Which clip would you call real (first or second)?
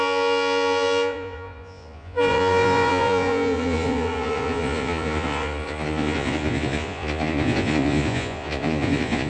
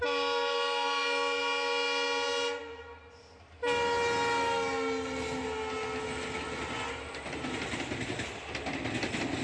second